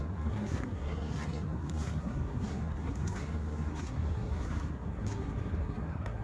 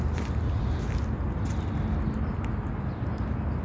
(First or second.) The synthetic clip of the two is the first